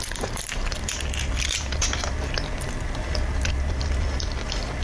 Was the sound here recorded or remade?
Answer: recorded